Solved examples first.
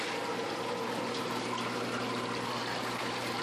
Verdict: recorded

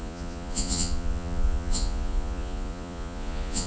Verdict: remade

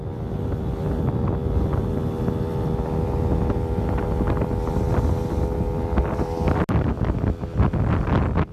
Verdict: recorded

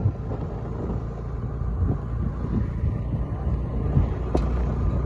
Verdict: recorded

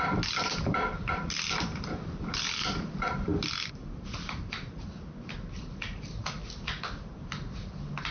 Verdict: recorded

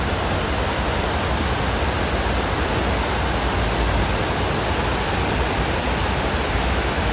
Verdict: recorded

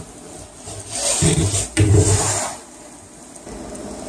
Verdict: recorded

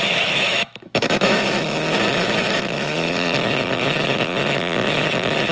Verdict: remade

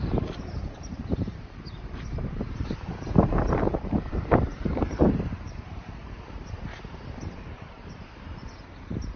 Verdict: remade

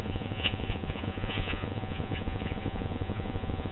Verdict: remade